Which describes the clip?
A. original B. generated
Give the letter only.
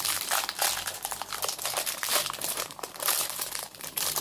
B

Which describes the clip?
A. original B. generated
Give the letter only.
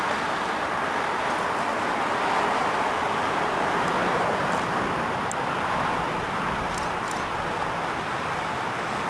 B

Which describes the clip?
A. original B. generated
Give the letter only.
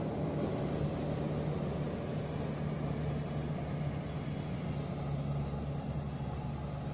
A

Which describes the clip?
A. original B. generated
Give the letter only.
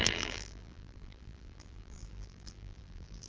B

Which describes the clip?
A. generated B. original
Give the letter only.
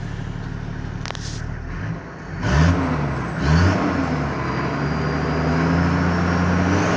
B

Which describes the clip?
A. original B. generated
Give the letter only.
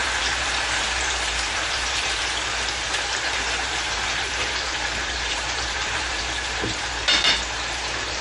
B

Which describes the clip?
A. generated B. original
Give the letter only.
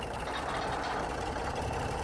A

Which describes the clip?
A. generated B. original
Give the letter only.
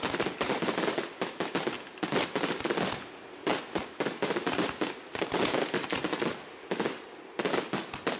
B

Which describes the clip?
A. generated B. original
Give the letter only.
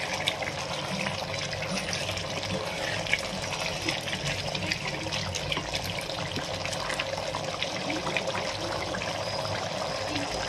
B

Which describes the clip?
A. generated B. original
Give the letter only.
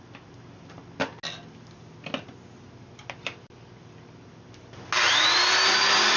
B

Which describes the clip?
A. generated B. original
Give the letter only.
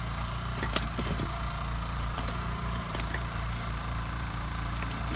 A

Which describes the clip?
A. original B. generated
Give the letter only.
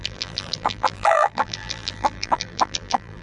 B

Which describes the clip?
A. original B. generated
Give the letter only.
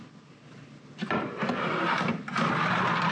B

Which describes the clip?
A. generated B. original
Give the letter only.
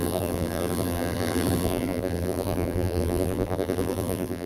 A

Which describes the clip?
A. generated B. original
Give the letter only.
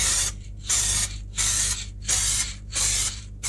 A